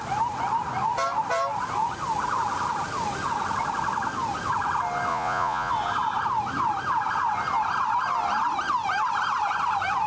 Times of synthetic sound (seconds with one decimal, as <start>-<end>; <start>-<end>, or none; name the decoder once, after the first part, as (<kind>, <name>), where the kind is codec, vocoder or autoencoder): 5.1-5.7 (vocoder, Vocos)